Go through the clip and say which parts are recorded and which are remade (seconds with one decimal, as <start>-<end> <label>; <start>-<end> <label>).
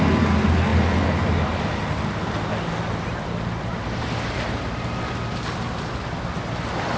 0.0-7.0 recorded